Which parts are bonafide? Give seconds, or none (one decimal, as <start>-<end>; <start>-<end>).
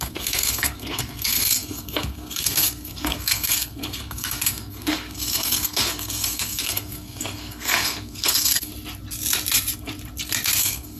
8.7-10.6